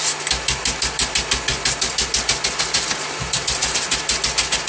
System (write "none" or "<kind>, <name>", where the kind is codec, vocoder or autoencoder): none